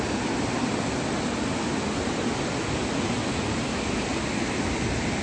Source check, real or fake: real